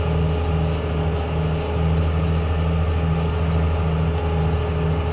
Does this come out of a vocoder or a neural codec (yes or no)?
no